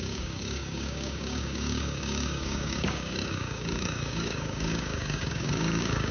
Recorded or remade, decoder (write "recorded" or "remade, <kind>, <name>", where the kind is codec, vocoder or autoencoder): remade, codec, DAC